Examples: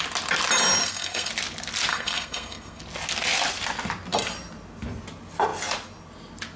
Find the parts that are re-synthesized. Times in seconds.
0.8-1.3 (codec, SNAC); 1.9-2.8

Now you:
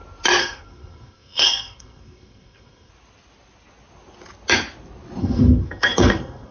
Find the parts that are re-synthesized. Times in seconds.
0.4-2.9 (codec, SNAC); 5.2-6.5

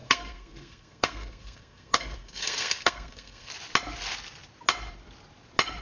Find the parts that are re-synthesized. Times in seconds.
0.0-3.5 (codec, SNAC)

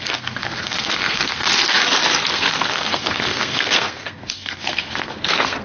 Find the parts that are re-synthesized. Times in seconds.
0.0-1.8 (codec, SNAC); 2.3-5.6